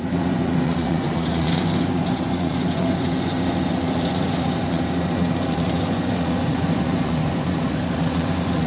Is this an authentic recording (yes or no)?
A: no